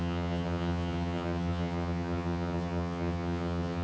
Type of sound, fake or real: fake